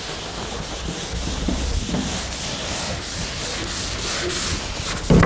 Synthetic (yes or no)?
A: no